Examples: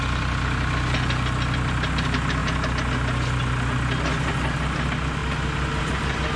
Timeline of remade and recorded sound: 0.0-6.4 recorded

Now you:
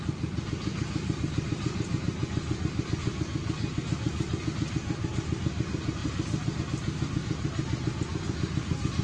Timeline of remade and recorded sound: 0.0-6.0 recorded; 6.0-6.6 remade; 6.6-9.0 recorded

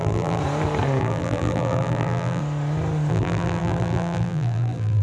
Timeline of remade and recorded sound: 0.0-0.4 remade; 0.4-1.0 recorded; 1.0-2.4 remade; 2.4-3.1 recorded; 3.1-5.0 remade